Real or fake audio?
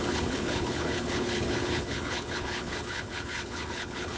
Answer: fake